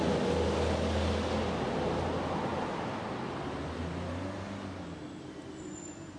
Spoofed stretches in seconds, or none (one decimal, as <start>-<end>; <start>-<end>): none